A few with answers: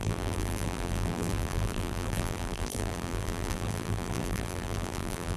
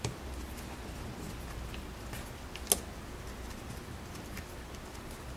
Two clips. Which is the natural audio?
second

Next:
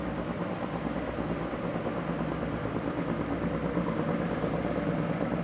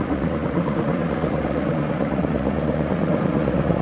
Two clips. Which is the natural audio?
first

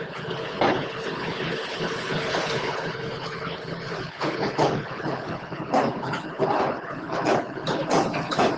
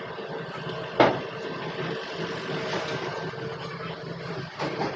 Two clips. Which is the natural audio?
second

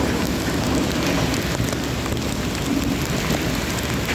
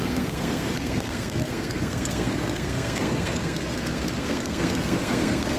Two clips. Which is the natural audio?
first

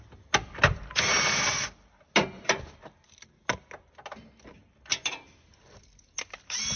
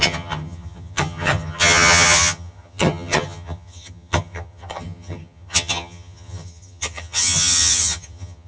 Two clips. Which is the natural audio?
first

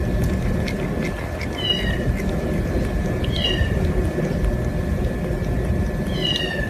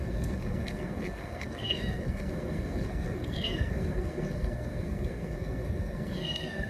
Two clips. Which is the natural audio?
first